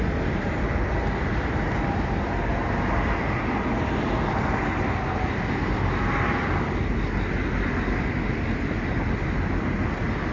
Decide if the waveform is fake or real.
real